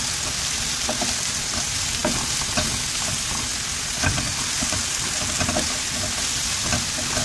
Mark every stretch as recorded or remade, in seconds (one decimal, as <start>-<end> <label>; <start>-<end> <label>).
0.0-7.2 recorded